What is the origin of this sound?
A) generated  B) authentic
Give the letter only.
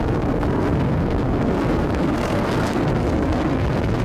A